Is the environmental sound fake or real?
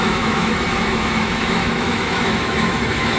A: fake